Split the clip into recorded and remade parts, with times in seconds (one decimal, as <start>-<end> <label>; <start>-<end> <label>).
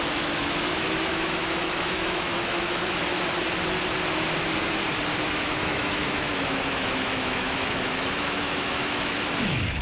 0.0-3.0 remade; 3.0-5.2 recorded; 5.2-9.8 remade